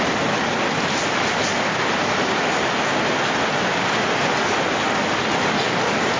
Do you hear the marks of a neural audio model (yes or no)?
no